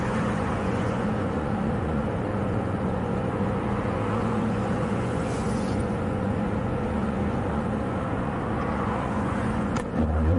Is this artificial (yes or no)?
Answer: yes